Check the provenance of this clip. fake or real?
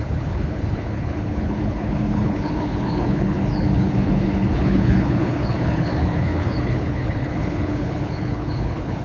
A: fake